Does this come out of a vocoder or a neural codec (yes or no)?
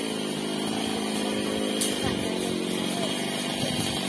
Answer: no